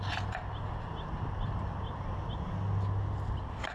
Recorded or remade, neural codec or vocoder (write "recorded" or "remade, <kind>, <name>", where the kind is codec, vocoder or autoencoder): recorded